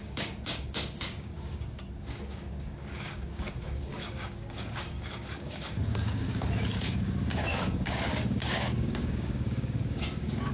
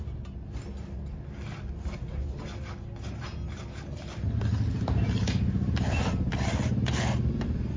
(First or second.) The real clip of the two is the second